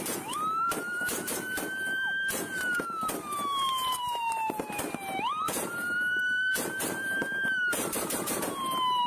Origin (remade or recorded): remade